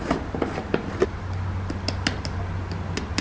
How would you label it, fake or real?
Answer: real